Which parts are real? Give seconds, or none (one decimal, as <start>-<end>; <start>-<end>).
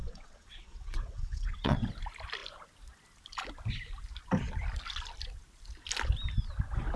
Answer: 1.9-7.0